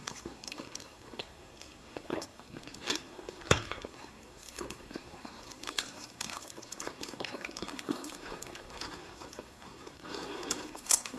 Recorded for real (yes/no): no